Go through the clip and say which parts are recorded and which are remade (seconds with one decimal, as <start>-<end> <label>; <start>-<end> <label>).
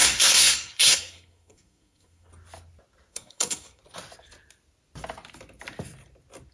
0.0-2.3 remade; 2.3-3.1 recorded; 3.1-3.8 remade; 3.8-6.5 recorded